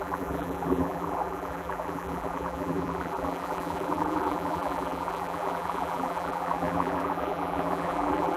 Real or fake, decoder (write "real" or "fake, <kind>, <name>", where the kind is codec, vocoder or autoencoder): fake, vocoder, BigVGAN v2